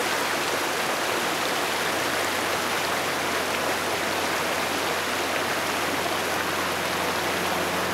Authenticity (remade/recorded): recorded